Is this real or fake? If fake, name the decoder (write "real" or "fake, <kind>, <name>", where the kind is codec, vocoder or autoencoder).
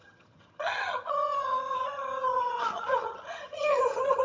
fake, vocoder, HiFi-GAN